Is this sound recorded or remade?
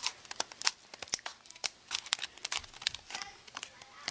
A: remade